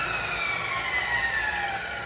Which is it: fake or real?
real